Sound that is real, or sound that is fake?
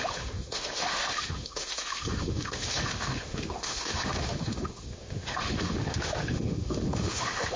fake